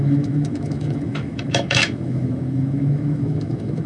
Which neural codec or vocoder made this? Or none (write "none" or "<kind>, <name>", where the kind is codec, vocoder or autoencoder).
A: autoencoder, DAC-VAE